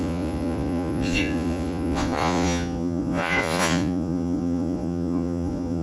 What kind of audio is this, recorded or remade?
remade